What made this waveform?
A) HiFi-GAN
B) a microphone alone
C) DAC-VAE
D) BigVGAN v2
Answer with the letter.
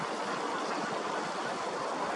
B